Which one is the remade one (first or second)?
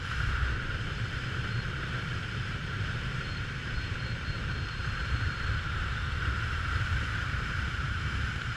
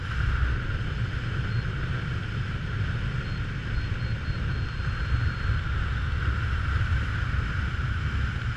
first